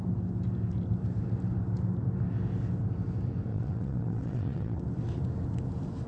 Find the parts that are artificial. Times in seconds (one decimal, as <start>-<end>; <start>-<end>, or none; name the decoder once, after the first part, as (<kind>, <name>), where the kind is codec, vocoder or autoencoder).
3.5-4.8 (vocoder, WaveNeXt)